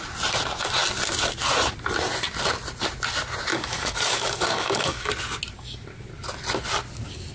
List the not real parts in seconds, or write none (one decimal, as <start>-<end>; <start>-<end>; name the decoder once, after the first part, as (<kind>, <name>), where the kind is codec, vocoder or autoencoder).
3.5-5.1 (codec, DAC)